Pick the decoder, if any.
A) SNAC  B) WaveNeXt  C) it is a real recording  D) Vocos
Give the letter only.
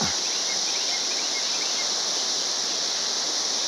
C